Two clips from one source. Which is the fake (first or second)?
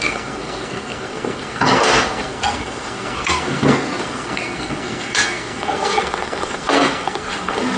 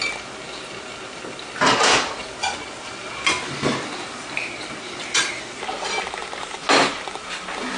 first